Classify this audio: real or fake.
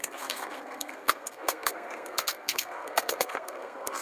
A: fake